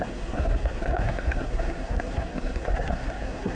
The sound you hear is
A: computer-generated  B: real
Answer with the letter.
A